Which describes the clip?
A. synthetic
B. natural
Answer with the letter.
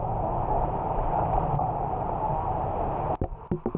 B